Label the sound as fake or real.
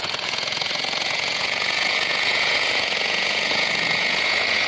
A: fake